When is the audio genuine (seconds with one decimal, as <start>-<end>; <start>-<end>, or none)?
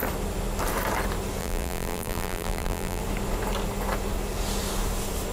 0.0-1.4; 3.0-5.3